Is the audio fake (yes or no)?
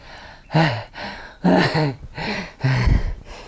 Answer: no